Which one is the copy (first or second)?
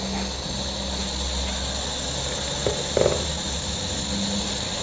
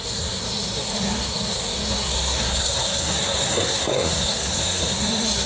second